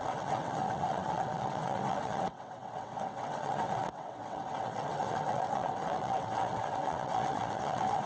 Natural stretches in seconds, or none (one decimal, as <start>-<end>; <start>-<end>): none

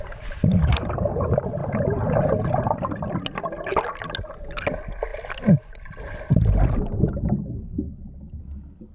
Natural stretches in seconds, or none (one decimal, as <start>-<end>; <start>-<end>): 0.0-8.9